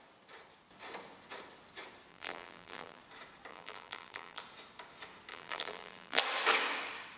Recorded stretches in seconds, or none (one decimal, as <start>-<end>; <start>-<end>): 0.0-2.1; 3.0-3.5; 4.4-5.3; 6.2-7.2